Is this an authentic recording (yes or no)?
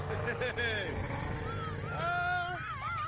yes